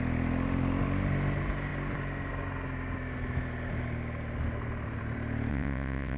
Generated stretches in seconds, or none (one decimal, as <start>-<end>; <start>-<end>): 5.5-6.2